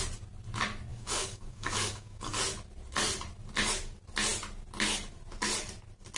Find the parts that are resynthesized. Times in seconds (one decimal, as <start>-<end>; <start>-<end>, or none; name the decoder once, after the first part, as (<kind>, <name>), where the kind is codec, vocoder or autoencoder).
0.9-2.4 (codec, DAC)

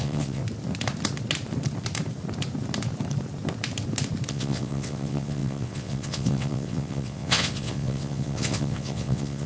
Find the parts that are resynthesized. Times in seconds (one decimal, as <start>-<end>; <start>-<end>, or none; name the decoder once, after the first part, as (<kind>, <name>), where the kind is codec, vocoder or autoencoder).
0.0-0.4 (vocoder, WaveNeXt); 4.3-9.5

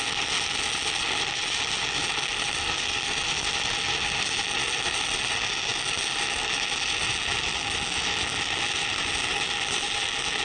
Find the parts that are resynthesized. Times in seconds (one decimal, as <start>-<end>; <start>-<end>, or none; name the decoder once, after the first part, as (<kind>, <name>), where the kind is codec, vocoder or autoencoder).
none

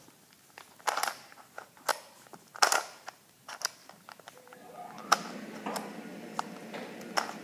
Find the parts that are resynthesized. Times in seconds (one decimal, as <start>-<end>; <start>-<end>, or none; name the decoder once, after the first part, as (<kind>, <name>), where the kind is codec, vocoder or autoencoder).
none